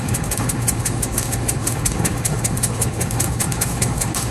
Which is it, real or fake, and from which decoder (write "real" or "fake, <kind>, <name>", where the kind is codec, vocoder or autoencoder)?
fake, autoencoder, DAC-VAE